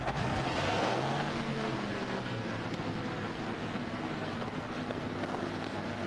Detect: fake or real fake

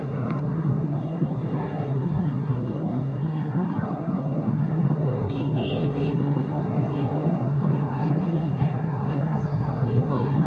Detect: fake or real fake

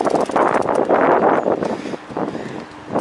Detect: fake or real real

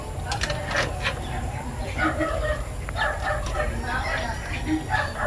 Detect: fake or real real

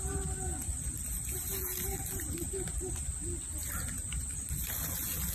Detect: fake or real real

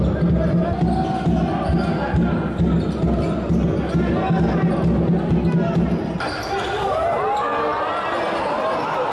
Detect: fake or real real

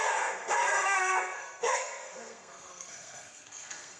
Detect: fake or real fake